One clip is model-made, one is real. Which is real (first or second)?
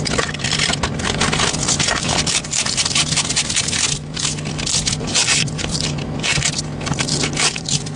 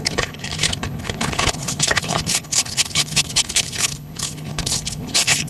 first